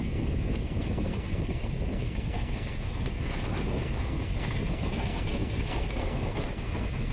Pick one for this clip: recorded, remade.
remade